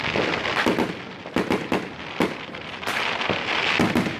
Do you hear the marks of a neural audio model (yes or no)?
no